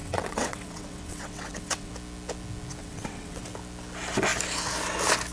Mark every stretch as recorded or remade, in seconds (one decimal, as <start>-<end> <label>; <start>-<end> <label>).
0.0-1.9 remade; 1.9-2.8 recorded; 2.8-3.4 remade; 3.4-5.3 recorded